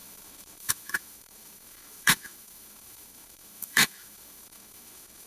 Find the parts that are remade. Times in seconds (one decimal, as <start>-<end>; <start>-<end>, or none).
0.0-5.3